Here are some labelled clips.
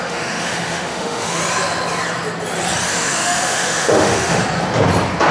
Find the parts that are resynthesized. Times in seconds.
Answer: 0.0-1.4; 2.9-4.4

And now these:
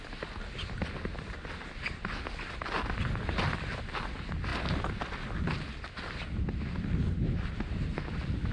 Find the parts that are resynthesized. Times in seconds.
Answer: none

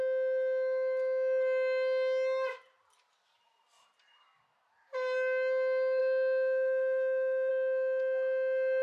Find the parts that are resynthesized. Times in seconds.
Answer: 6.0-7.5

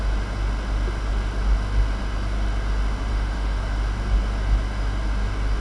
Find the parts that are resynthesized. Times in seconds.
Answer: 3.1-3.6